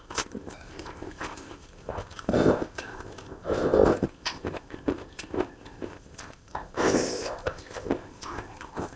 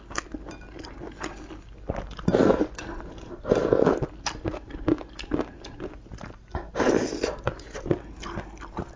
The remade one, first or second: first